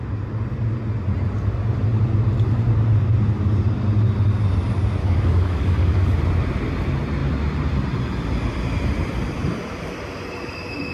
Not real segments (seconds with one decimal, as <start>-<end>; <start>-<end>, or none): 5.0-6.2